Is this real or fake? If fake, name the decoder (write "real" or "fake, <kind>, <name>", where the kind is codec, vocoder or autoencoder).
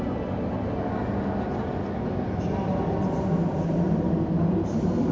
real